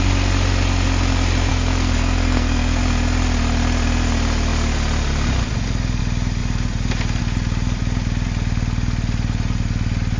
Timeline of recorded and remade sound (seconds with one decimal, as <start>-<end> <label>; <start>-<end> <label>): 0.0-1.5 recorded; 1.5-2.8 remade; 2.8-10.2 recorded